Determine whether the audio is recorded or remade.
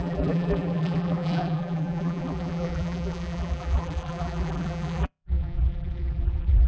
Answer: remade